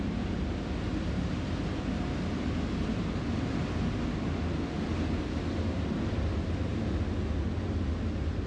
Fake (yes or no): no